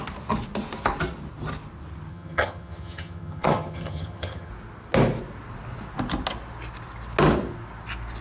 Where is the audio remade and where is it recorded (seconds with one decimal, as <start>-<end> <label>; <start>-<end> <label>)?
0.0-2.1 recorded; 2.1-4.5 remade; 4.5-8.2 recorded